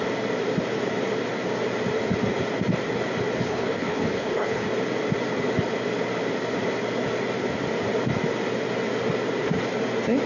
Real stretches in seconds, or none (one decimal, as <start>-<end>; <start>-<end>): 0.0-3.4; 4.7-10.3